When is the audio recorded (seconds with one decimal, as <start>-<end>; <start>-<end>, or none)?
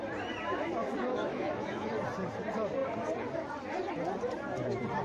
0.0-1.1; 1.9-5.0